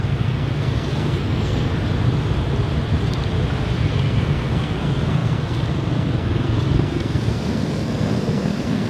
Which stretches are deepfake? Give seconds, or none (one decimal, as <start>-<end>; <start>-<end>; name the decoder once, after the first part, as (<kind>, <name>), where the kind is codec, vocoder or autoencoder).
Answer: 0.0-1.7 (codec, SNAC); 3.9-8.9